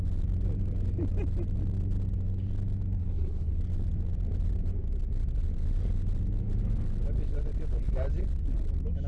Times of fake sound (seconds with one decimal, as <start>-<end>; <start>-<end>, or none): 3.0-3.6